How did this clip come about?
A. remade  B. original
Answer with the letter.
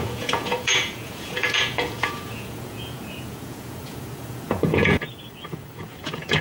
A